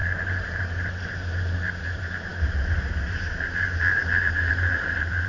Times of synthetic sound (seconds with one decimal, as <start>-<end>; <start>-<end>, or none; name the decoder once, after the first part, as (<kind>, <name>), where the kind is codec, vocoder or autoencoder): 0.0-5.3 (vocoder, BigVGAN v2)